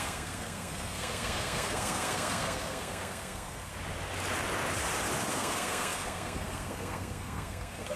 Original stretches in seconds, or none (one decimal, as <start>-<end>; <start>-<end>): 3.7-5.3

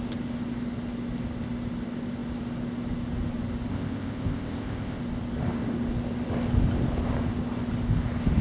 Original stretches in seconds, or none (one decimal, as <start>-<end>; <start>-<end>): 0.0-3.7; 5.0-8.4

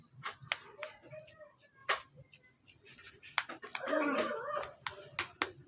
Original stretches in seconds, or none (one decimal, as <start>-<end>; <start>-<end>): 0.0-5.7

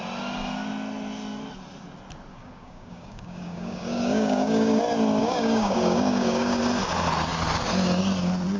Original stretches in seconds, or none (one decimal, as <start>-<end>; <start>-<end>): 0.0-2.3; 4.8-5.2; 6.6-8.6